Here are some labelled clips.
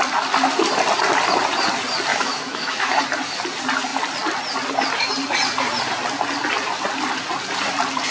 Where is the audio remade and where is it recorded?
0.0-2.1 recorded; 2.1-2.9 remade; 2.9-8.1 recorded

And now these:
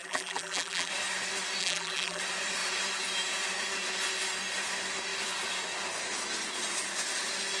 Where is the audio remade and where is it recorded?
0.0-0.9 remade; 0.9-1.6 recorded; 1.6-2.2 remade; 2.2-7.6 recorded

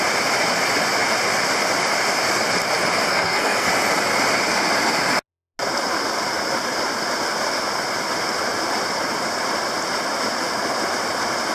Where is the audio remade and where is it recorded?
0.0-3.1 recorded; 3.1-3.7 remade; 3.7-11.5 recorded

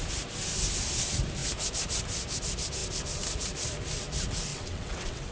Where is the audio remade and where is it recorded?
0.0-4.5 recorded; 4.5-5.3 remade

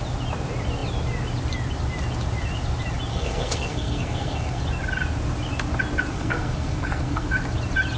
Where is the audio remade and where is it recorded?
0.0-3.1 recorded; 3.1-4.6 remade; 4.6-6.1 recorded; 6.1-7.3 remade; 7.3-8.0 recorded

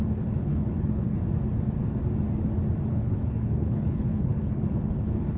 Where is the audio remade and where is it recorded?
0.0-1.2 remade; 1.2-2.9 recorded; 2.9-5.4 remade

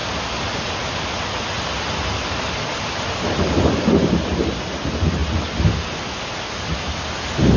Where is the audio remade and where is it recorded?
0.0-7.6 recorded